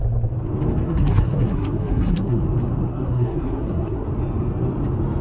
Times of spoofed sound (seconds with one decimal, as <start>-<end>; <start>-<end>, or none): 0.8-2.4; 2.9-4.1